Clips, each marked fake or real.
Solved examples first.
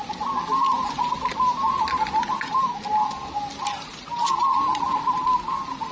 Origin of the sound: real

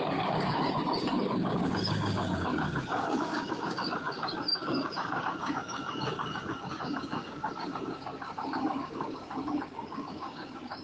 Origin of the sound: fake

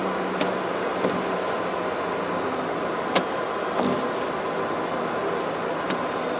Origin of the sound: real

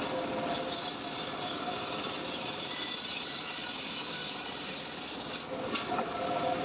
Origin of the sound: real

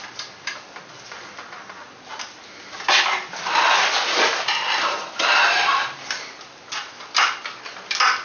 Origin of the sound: real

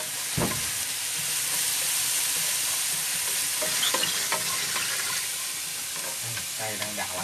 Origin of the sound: real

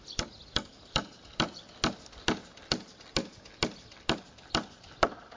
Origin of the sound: real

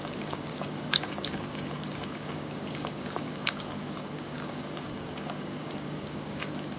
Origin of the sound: fake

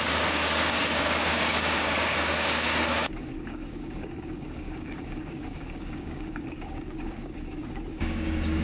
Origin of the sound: fake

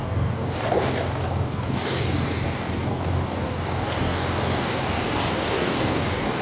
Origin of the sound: fake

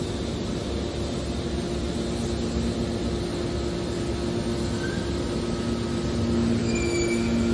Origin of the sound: real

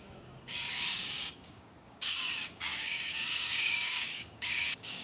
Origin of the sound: fake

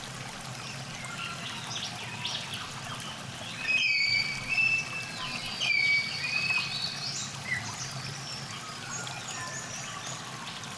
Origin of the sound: real